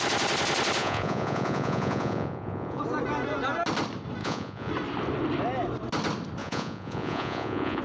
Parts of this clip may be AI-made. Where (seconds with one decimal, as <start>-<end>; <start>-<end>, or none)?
0.8-2.8; 4.2-4.7; 6.4-7.8